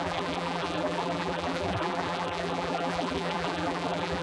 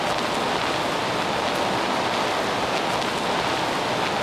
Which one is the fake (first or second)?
first